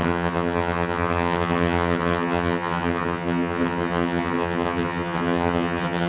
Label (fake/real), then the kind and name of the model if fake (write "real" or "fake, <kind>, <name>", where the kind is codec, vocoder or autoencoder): fake, vocoder, HiFi-GAN